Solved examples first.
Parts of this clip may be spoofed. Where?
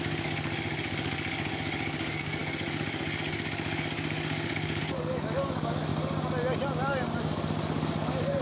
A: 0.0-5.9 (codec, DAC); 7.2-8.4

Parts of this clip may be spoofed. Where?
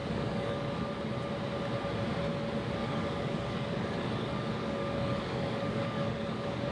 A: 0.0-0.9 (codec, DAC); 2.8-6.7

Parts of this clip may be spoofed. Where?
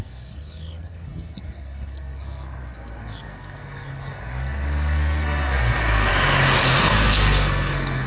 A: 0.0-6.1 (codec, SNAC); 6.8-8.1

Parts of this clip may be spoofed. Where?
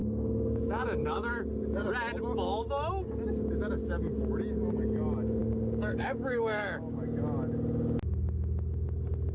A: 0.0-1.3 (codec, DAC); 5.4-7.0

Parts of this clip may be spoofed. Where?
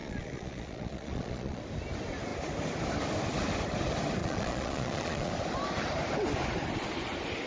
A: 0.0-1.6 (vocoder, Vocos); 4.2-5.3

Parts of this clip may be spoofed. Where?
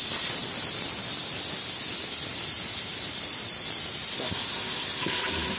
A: none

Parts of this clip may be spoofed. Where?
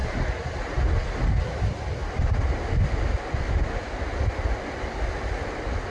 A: none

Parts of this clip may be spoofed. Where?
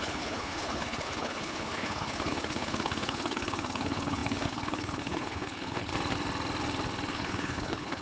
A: 0.0-5.9 (codec, HILCodec); 7.1-8.0